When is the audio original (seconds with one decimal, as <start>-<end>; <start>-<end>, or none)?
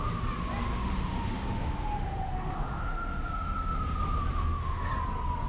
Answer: 0.0-0.7; 3.8-4.3; 4.9-5.5